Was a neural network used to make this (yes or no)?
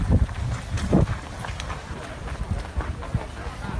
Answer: no